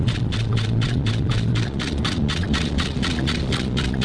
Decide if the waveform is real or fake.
fake